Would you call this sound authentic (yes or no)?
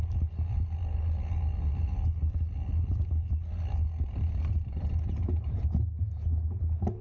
yes